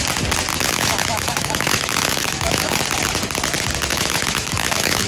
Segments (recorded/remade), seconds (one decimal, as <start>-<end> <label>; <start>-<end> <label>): 0.0-0.5 recorded; 0.5-2.8 remade; 2.8-3.9 recorded; 3.9-5.1 remade